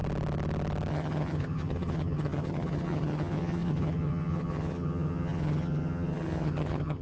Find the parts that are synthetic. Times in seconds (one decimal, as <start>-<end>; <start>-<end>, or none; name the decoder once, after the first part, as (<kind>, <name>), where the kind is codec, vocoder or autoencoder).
0.9-7.0 (vocoder, HiFi-GAN)